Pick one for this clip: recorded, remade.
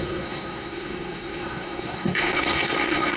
remade